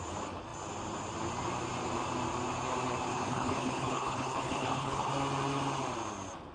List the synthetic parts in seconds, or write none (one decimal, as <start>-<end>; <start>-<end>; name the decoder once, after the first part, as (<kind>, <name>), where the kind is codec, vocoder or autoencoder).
3.1-5.1 (codec, HILCodec)